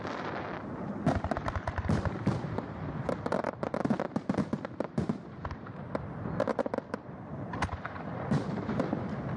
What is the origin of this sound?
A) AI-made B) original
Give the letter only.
A